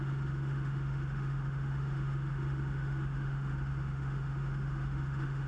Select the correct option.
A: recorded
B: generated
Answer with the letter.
B